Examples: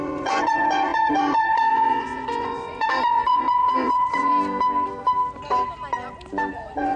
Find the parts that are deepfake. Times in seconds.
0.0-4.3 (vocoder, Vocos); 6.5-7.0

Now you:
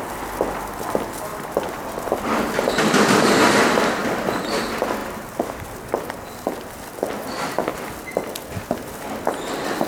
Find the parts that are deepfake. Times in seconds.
4.0-4.6 (vocoder, BigVGAN v2)

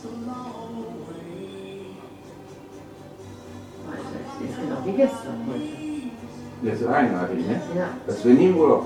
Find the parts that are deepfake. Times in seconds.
1.5-2.2 (codec, DAC)

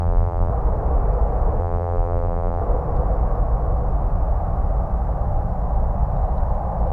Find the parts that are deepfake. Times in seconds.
0.0-0.5 (vocoder, BigVGAN v2); 1.6-2.6

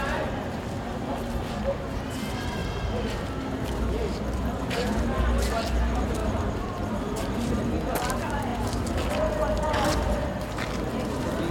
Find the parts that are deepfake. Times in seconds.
6.2-7.6 (vocoder, BigVGAN v2)

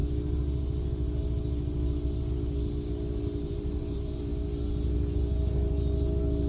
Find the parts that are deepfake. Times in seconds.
3.9-4.3 (vocoder, BigVGAN v2)